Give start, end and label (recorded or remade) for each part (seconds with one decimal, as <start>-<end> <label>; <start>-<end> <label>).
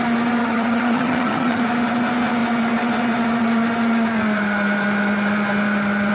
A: 0.0-0.4 recorded; 0.4-1.6 remade; 1.6-6.1 recorded